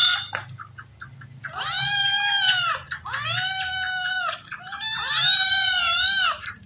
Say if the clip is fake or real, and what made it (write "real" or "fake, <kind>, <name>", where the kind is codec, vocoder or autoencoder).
real